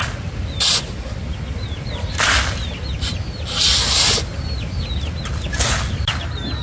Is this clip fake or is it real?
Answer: real